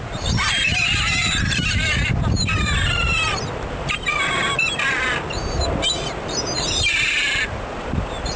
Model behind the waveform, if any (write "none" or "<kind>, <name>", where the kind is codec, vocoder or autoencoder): vocoder, BigVGAN v2